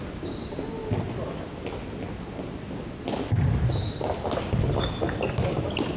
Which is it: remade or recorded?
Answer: recorded